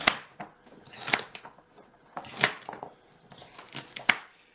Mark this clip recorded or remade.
recorded